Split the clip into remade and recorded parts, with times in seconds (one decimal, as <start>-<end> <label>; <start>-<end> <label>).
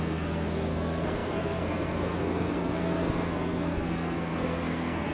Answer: 0.0-5.1 remade